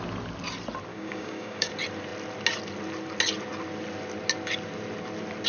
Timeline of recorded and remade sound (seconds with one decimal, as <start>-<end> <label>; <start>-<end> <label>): 0.0-0.9 recorded; 0.9-1.7 remade; 1.7-5.5 recorded